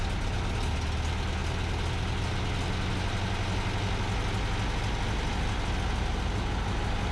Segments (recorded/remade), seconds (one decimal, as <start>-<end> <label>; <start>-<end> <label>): 0.0-7.1 recorded